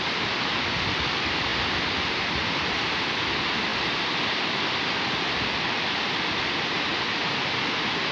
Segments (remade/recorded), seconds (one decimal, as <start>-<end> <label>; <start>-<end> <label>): 0.0-8.1 recorded